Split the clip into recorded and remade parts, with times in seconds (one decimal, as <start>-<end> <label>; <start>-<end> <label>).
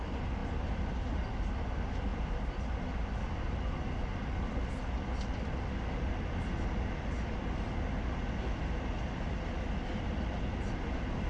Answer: 0.0-11.3 recorded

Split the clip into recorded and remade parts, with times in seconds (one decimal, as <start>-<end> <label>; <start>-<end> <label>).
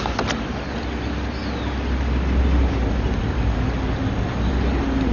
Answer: 0.0-5.1 recorded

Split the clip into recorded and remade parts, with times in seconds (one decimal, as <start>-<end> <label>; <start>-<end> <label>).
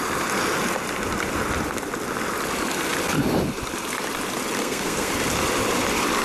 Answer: 0.0-4.6 recorded; 4.6-5.1 remade; 5.1-6.2 recorded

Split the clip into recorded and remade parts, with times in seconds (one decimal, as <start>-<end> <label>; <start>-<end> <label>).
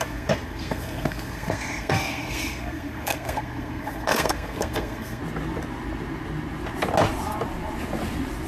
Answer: 0.0-5.2 remade; 5.2-8.5 recorded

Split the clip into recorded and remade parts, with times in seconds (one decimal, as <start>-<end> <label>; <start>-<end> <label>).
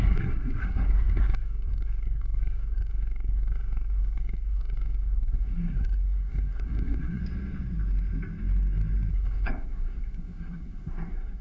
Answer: 0.0-7.2 remade; 7.2-9.1 recorded; 9.1-11.4 remade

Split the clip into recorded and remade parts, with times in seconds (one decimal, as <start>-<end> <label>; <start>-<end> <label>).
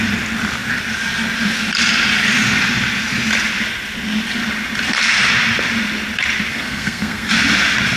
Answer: 0.0-6.5 recorded; 6.5-7.3 remade; 7.3-8.0 recorded